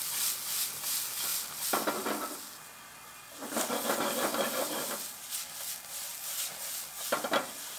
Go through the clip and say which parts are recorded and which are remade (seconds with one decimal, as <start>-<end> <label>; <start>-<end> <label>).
0.0-7.8 recorded